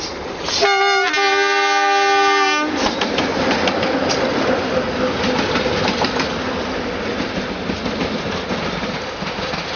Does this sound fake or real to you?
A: real